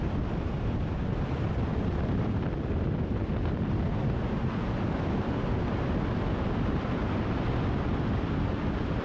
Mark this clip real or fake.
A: real